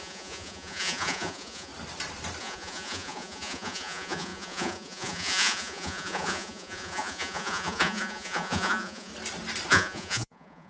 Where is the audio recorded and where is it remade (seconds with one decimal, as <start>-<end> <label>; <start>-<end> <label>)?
0.0-1.7 remade; 1.7-2.4 recorded; 2.4-9.1 remade; 9.1-9.7 recorded; 9.7-10.7 remade